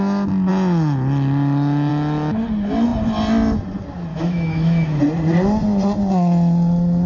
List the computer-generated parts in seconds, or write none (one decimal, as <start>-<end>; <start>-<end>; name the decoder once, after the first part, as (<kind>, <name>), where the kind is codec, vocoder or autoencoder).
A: 4.1-5.0 (autoencoder, DAC-VAE)